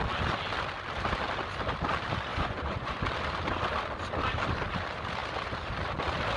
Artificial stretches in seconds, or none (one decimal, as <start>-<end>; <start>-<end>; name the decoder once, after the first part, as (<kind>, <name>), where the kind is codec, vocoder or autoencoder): 2.3-3.0 (vocoder, Vocos)